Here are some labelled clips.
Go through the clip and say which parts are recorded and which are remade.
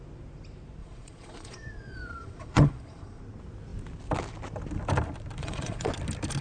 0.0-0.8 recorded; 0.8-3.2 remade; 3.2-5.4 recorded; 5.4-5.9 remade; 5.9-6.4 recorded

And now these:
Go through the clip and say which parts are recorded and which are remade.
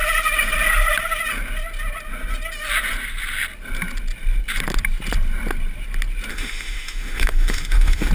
0.0-6.3 recorded; 6.3-8.1 remade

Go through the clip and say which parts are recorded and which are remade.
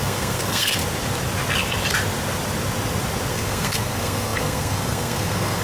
0.0-0.8 remade; 0.8-3.3 recorded; 3.3-5.6 remade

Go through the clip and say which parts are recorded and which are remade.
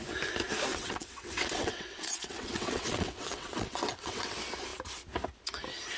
0.0-0.7 recorded; 0.7-4.3 remade; 4.3-6.0 recorded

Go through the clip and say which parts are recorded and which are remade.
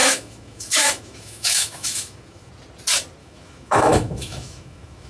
0.0-2.5 remade; 2.5-3.2 recorded; 3.2-5.1 remade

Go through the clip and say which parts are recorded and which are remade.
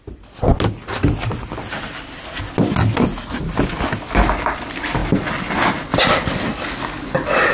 0.0-7.5 recorded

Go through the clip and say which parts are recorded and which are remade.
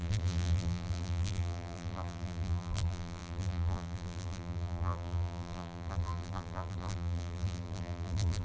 0.0-8.4 remade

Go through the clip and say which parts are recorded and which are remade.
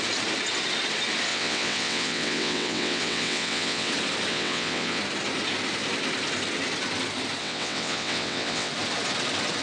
0.0-1.3 recorded; 1.3-3.9 remade; 3.9-4.3 recorded; 4.3-5.0 remade; 5.0-7.4 recorded; 7.4-8.7 remade; 8.7-9.6 recorded